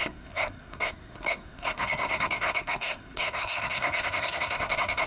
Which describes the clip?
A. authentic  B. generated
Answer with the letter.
B